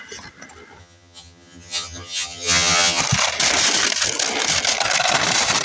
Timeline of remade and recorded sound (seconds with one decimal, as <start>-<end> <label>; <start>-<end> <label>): 0.0-0.8 recorded; 0.8-3.0 remade; 3.0-5.6 recorded